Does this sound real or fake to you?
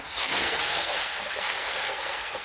fake